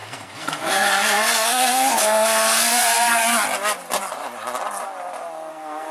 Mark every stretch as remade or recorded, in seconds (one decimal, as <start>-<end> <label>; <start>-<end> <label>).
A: 0.0-3.2 remade; 3.2-5.5 recorded; 5.5-5.9 remade